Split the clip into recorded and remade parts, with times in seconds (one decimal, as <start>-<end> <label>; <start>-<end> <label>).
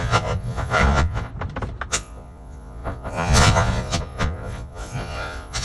0.0-1.3 remade; 1.3-1.9 recorded; 1.9-5.6 remade